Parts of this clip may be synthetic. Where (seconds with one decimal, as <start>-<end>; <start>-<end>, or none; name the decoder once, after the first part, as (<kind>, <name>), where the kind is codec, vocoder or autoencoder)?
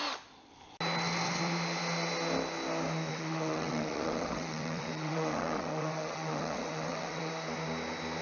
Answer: 3.1-7.3 (vocoder, WaveNeXt)